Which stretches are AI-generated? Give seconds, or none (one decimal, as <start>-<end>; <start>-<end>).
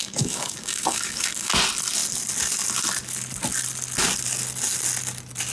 0.0-1.5